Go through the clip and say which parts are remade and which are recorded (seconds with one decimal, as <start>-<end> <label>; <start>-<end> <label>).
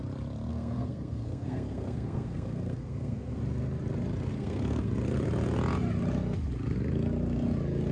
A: 0.0-0.5 recorded; 0.5-3.4 remade; 3.4-4.3 recorded; 4.3-4.9 remade; 4.9-7.9 recorded